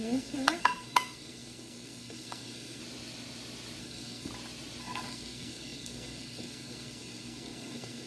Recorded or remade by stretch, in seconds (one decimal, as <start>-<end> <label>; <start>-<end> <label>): 0.0-2.8 remade; 2.8-3.8 recorded; 3.8-4.3 remade; 4.3-4.8 recorded; 4.8-8.1 remade